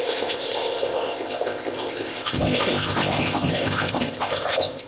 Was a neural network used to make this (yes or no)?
yes